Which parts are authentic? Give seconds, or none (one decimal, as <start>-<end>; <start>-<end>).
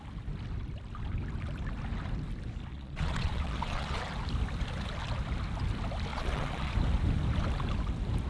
0.0-2.7; 4.0-6.1; 6.7-8.3